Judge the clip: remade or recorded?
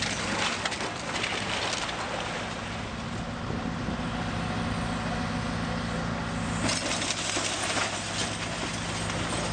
recorded